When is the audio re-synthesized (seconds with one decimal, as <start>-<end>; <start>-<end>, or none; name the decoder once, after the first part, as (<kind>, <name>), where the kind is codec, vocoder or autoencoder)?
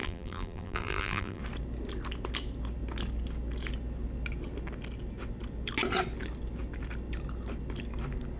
0.0-1.4 (vocoder, BigVGAN v2)